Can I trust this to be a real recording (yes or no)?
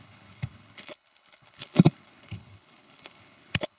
no